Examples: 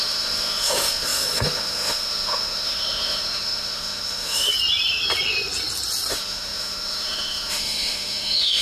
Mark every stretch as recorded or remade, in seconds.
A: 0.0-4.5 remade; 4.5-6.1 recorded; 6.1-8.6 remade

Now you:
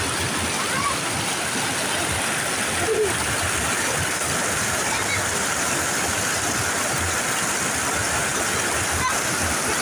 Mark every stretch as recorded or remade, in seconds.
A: 0.0-9.8 recorded

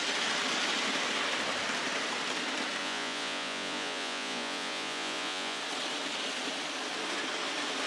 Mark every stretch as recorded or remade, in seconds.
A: 0.0-2.8 recorded; 2.8-5.6 remade; 5.6-7.9 recorded

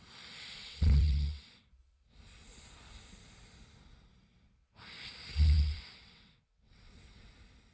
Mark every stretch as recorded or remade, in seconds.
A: 0.0-0.6 recorded; 0.6-1.5 remade; 1.5-5.3 recorded; 5.3-7.3 remade; 7.3-7.7 recorded

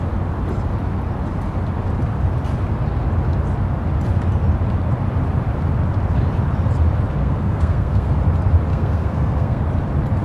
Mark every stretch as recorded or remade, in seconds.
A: 0.0-7.2 recorded; 7.2-8.1 remade; 8.1-8.7 recorded; 8.7-9.6 remade; 9.6-10.2 recorded